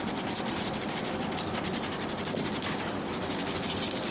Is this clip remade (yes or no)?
no